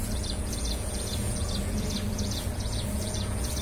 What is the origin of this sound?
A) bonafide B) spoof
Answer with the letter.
B